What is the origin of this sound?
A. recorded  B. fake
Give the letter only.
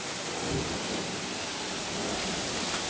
A